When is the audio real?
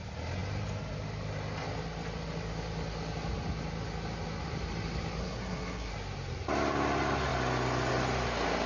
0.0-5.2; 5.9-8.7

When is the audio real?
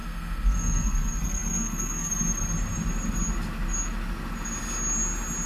2.1-5.5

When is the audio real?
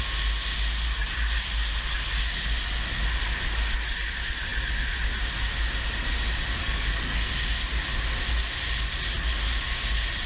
0.0-6.6; 7.3-10.3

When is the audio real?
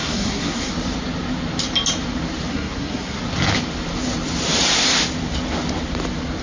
0.7-2.5; 3.2-6.4